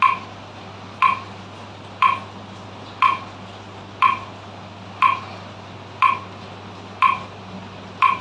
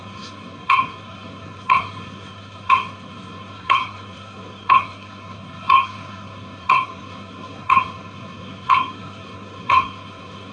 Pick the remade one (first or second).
second